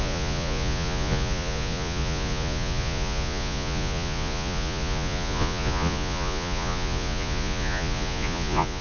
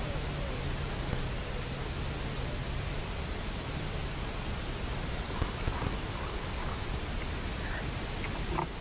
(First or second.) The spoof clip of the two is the first